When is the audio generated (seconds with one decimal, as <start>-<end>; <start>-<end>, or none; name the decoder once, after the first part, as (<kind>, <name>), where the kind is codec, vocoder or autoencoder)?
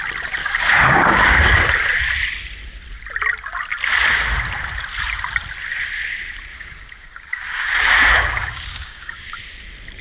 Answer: 0.4-1.6 (codec, DAC); 6.5-9.4